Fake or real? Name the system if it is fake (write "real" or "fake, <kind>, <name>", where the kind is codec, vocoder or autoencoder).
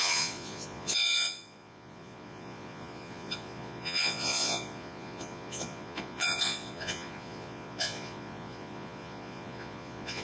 fake, vocoder, Vocos